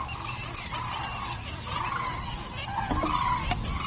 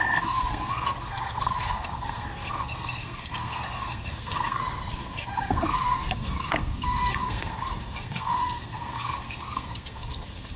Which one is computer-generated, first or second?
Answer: second